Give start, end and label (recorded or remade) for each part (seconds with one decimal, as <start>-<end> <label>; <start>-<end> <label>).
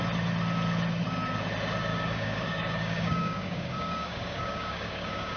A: 0.0-1.9 recorded; 1.9-5.4 remade